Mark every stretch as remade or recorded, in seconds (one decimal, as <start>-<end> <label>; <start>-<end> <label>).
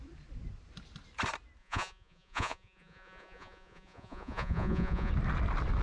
0.0-1.6 recorded; 1.6-5.1 remade; 5.1-5.8 recorded